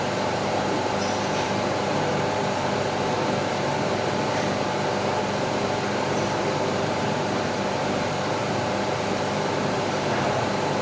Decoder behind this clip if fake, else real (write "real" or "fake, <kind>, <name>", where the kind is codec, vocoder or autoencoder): fake, vocoder, BigVGAN v2